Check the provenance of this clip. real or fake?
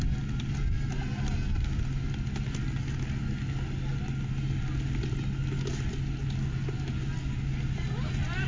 real